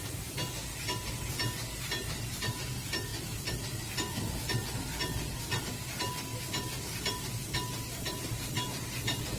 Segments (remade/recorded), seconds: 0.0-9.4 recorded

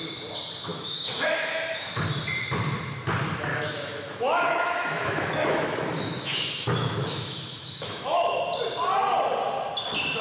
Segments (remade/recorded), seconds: 0.0-0.7 recorded; 0.7-2.0 remade; 2.0-3.5 recorded; 3.5-8.4 remade; 8.4-10.2 recorded